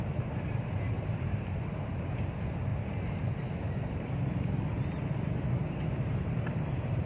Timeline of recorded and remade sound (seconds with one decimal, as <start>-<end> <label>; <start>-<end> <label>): 0.0-2.7 remade; 2.7-6.0 recorded; 6.0-7.1 remade